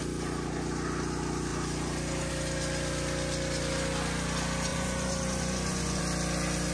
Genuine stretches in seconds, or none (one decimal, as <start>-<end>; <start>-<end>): 0.0-4.7; 6.0-6.7